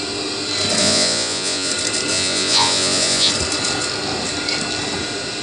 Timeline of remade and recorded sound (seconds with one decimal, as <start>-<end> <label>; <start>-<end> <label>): 0.0-0.8 recorded; 0.8-1.7 remade; 1.7-2.1 recorded; 2.1-3.3 remade; 3.3-5.4 recorded

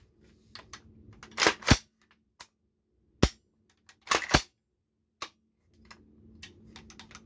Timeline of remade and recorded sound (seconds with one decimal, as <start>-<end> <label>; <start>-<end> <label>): 0.0-7.3 recorded

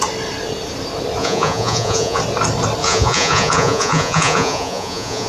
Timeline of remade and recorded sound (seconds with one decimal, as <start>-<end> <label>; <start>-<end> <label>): 0.0-1.2 recorded; 1.2-2.2 remade; 2.2-2.8 recorded; 2.8-5.3 remade

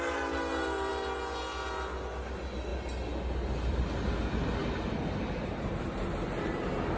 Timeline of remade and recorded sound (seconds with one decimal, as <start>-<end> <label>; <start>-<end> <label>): 0.0-7.0 recorded

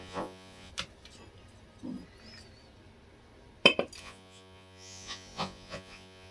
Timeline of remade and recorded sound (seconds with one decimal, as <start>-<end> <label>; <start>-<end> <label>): 0.0-0.7 remade; 0.7-4.0 recorded; 4.0-6.3 remade

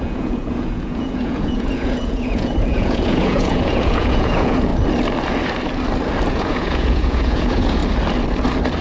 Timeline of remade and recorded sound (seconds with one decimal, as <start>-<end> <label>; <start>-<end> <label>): 0.0-4.7 remade; 4.7-6.3 recorded; 6.3-7.8 remade; 7.8-8.8 recorded

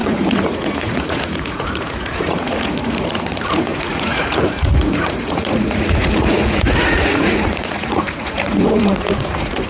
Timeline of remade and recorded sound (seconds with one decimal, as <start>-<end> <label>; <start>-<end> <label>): 0.0-9.7 remade

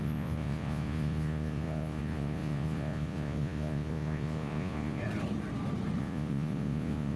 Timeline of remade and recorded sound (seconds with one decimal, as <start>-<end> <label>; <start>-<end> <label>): 0.0-5.0 remade; 5.0-6.0 recorded; 6.0-7.2 remade